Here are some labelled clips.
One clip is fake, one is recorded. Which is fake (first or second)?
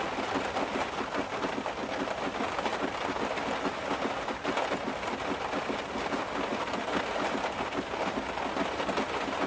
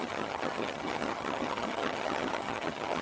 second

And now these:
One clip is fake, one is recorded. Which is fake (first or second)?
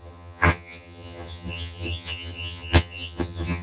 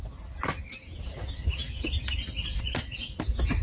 first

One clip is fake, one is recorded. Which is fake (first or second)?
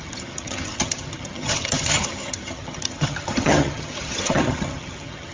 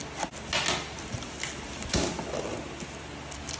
first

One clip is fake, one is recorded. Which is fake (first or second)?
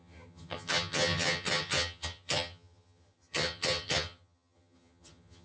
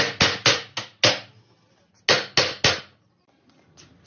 first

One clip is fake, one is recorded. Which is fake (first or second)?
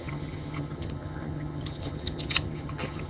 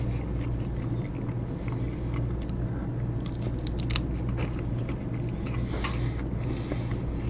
first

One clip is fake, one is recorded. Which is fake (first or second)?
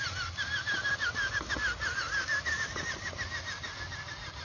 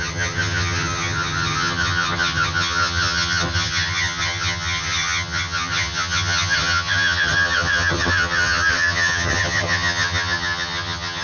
second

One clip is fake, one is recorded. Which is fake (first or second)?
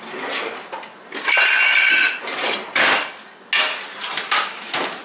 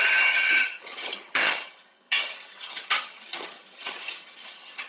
second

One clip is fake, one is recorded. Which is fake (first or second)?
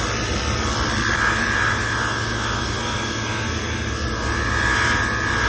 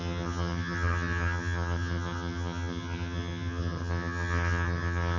second